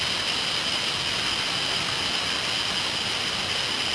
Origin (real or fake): real